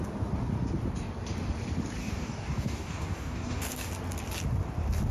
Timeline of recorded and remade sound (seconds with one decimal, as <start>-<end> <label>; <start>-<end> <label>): 0.0-2.0 recorded; 2.0-3.9 remade; 3.9-5.1 recorded